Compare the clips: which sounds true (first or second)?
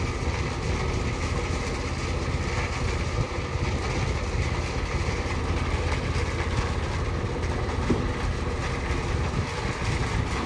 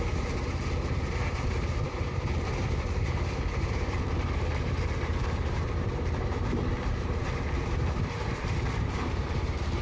first